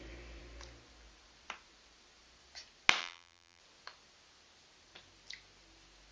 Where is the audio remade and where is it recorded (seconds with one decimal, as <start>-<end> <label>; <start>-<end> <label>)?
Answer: 0.0-3.0 recorded; 3.0-3.6 remade; 3.6-6.1 recorded